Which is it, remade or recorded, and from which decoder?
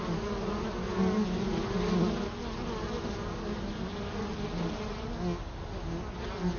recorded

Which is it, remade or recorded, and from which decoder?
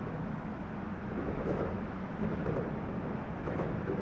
remade, autoencoder, DAC-VAE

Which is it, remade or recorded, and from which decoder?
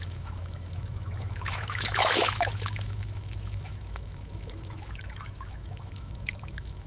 remade, autoencoder, DAC-VAE